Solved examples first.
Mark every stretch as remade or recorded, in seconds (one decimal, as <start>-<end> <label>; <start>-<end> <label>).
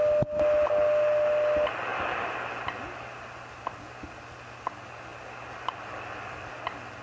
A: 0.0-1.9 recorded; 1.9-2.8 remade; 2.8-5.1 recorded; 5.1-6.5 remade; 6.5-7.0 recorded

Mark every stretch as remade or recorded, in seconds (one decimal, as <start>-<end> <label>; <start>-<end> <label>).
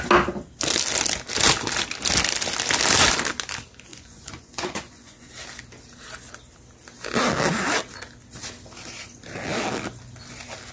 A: 0.0-3.9 recorded; 3.9-5.3 remade; 5.3-10.7 recorded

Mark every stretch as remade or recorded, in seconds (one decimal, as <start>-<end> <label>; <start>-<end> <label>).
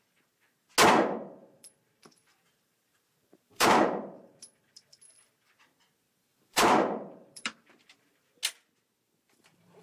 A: 0.0-1.4 recorded; 1.4-5.3 remade; 5.3-6.3 recorded; 6.3-8.3 remade; 8.3-9.8 recorded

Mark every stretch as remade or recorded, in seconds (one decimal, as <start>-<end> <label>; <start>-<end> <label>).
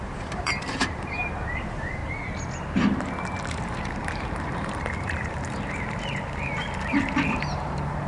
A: 0.0-2.0 remade; 2.0-3.5 recorded; 3.5-8.1 remade